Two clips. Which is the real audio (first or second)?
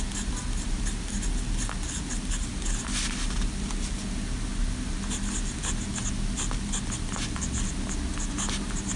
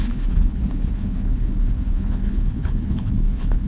first